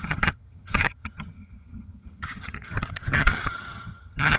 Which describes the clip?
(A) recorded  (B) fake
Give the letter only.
B